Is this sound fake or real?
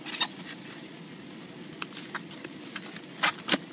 real